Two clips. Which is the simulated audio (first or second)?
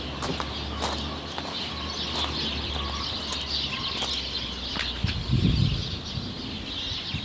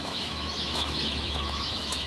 second